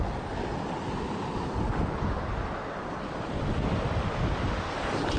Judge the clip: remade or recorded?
recorded